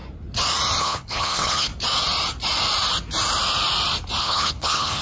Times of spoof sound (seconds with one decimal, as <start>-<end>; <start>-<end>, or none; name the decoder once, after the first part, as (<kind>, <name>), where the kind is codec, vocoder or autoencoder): 0.8-1.7 (codec, HILCodec); 4.2-5.0